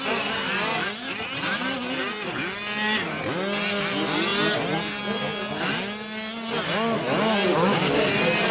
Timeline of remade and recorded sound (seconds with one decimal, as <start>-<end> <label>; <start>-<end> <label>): 0.0-7.5 recorded; 7.5-8.1 remade; 8.1-8.5 recorded